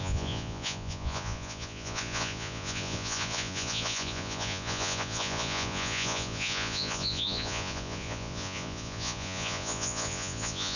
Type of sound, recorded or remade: remade